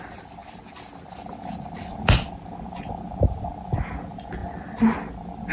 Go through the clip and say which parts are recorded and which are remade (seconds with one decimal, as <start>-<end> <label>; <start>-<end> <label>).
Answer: 0.0-5.5 recorded